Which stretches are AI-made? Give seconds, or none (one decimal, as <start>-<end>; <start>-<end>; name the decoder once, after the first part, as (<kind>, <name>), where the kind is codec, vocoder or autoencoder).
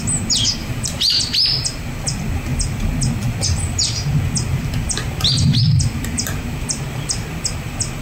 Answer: 0.6-1.2 (vocoder, BigVGAN v2)